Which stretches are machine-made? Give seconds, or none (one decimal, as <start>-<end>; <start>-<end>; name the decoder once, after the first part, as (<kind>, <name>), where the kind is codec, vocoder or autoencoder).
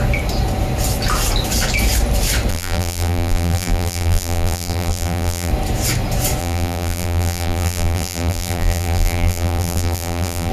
2.5-5.5 (vocoder, BigVGAN v2); 6.4-10.5